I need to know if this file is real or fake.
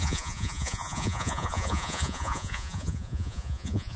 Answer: fake